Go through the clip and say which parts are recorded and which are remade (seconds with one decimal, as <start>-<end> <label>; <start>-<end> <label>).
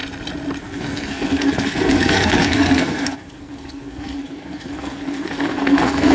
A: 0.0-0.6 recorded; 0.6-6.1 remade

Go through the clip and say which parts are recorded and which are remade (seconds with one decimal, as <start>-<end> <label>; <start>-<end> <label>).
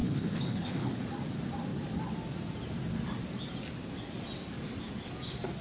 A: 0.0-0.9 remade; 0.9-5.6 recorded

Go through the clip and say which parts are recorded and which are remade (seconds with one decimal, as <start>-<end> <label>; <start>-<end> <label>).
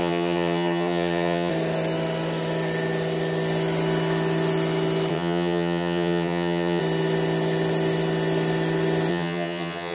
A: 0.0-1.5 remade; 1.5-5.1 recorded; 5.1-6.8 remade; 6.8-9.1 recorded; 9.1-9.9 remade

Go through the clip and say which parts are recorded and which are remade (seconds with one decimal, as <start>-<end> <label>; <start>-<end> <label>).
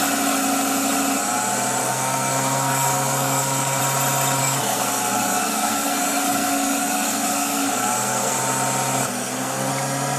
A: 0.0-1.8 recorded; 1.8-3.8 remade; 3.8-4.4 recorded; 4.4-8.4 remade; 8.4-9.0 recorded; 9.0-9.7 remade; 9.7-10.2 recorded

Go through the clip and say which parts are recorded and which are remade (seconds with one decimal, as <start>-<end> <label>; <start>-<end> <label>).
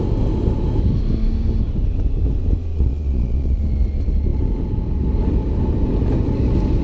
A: 0.0-2.7 recorded; 2.7-3.6 remade; 3.6-6.8 recorded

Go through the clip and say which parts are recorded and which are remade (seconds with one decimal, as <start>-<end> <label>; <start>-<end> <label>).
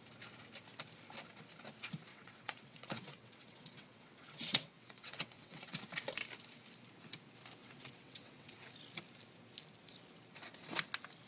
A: 0.0-2.1 recorded; 2.1-5.8 remade; 5.8-7.6 recorded; 7.6-8.7 remade; 8.7-11.3 recorded